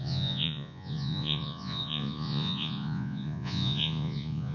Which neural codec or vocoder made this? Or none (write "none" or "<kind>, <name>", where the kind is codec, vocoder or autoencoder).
vocoder, Vocos